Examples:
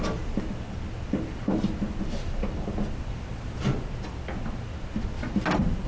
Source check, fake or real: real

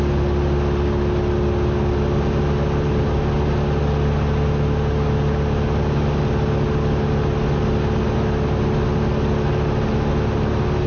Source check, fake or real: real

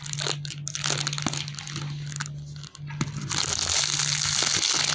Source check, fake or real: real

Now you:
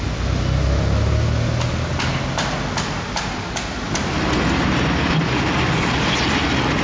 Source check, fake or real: real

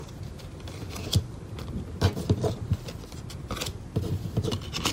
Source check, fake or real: real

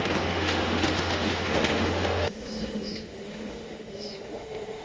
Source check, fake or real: fake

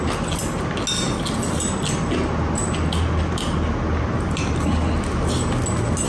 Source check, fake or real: real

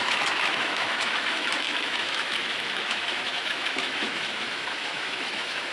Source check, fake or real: fake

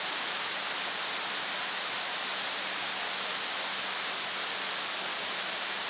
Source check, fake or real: real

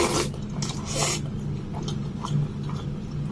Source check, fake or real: real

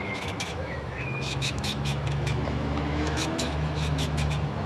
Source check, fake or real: fake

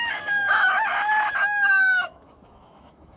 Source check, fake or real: fake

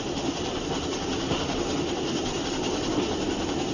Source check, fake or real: real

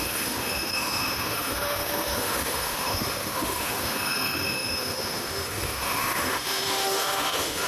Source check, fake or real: fake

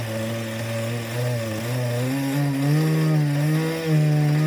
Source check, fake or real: real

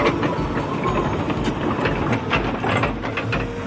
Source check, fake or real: real